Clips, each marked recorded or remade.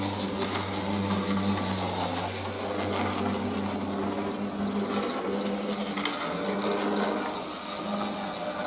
recorded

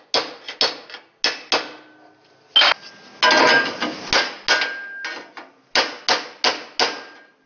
recorded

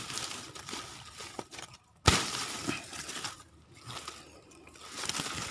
recorded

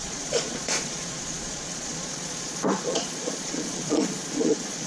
remade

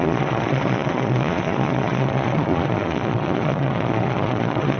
remade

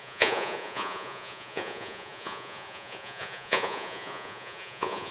remade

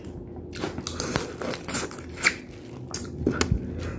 recorded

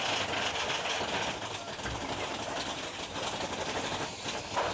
recorded